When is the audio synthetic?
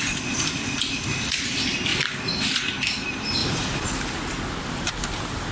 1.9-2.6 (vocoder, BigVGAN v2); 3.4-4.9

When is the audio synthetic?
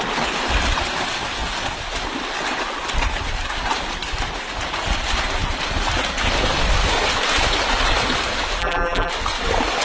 8.6-9.1 (vocoder, BigVGAN v2)